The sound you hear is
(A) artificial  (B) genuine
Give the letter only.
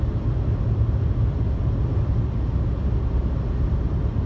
B